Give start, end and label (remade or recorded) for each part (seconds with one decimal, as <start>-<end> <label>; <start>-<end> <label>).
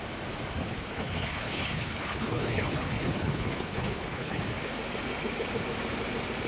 0.0-0.6 recorded; 0.6-4.4 remade; 4.4-6.5 recorded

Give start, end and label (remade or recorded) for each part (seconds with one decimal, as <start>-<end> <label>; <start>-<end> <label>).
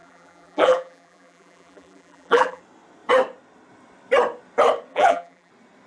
0.0-2.6 remade; 2.6-4.9 recorded; 4.9-5.5 remade; 5.5-5.9 recorded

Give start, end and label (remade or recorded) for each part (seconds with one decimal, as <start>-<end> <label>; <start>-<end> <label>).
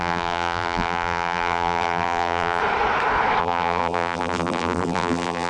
0.0-2.6 remade; 2.6-3.4 recorded; 3.4-5.5 remade